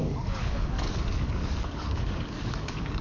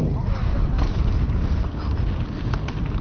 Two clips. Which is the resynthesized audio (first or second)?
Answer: first